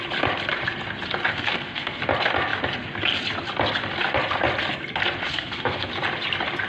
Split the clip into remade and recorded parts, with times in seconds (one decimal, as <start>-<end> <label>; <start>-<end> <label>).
0.0-1.3 recorded; 1.3-2.0 remade; 2.0-5.3 recorded; 5.3-5.9 remade; 5.9-6.7 recorded